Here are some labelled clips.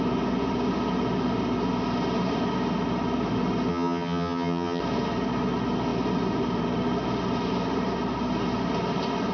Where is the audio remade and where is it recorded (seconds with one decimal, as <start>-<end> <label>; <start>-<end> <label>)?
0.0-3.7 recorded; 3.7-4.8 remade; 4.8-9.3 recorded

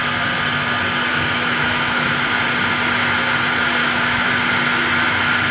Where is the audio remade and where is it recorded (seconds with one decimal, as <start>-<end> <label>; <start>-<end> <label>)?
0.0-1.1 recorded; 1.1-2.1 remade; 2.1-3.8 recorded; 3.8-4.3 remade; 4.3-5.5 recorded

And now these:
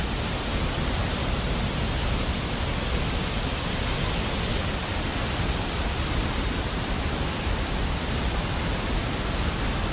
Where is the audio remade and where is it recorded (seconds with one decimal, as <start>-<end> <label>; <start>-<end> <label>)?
0.0-9.9 recorded

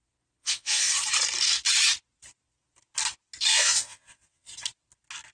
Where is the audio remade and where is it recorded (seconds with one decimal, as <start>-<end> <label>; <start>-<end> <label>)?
0.0-0.4 recorded; 0.4-0.9 remade; 0.9-3.5 recorded; 3.5-4.5 remade; 4.5-5.3 recorded

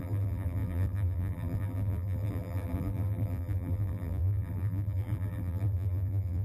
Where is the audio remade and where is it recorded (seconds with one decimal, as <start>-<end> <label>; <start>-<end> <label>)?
0.0-6.4 remade